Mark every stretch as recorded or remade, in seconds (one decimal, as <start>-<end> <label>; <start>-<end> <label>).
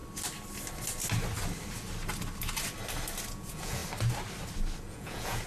0.0-3.3 recorded; 3.3-3.8 remade; 3.8-4.8 recorded; 4.8-5.5 remade